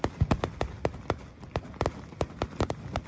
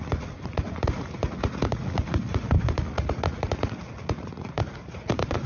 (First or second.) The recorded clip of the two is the first